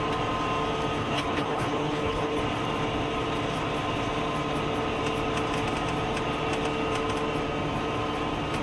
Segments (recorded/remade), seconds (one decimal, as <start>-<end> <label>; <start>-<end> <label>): 0.0-1.0 recorded; 1.0-2.4 remade; 2.4-8.6 recorded